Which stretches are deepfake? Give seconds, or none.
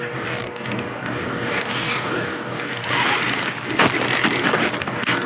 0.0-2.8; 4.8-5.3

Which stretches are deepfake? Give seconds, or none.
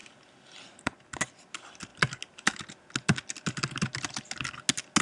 none